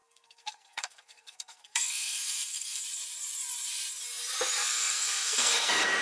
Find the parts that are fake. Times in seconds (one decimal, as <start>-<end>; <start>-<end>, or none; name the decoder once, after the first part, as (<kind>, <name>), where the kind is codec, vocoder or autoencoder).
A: 0.0-2.8 (codec, SNAC); 4.6-6.0